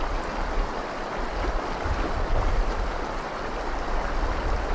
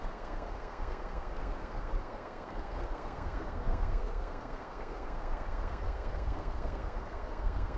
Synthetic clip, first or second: second